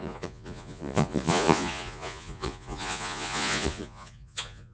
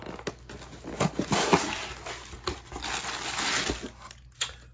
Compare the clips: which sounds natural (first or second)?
second